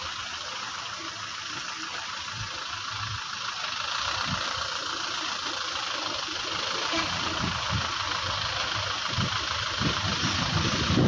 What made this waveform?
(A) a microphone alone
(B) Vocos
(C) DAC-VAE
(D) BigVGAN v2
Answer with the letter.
D